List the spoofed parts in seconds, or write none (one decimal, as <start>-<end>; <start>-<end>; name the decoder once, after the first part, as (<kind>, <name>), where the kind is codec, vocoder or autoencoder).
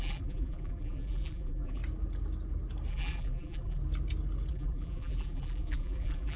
0.0-1.8 (vocoder, BigVGAN v2); 2.9-3.8; 4.5-6.4